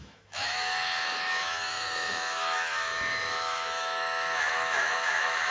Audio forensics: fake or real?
fake